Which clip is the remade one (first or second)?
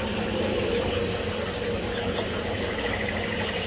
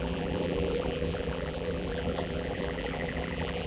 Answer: second